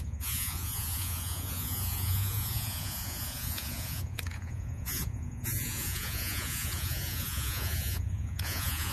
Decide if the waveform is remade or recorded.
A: remade